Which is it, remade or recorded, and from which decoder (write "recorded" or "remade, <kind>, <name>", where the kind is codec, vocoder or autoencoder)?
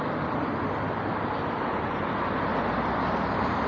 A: recorded